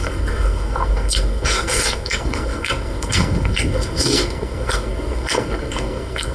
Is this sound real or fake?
fake